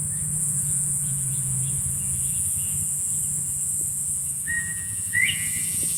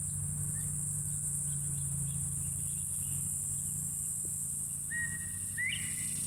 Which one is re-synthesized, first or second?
first